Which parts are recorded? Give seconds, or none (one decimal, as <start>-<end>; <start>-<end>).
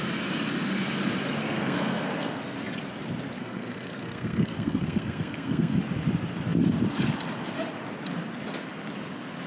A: 0.0-1.4; 2.4-3.4; 5.8-9.5